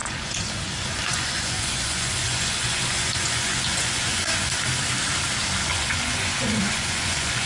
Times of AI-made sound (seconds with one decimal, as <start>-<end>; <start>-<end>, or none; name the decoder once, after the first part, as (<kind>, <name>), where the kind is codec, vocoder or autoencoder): 0.0-4.5 (vocoder, Vocos); 5.7-7.5